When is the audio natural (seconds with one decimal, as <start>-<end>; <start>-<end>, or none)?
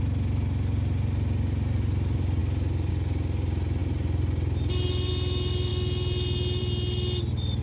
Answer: 0.0-7.6